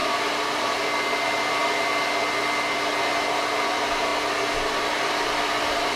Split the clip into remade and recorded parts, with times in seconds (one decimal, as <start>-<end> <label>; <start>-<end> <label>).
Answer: 0.0-6.0 recorded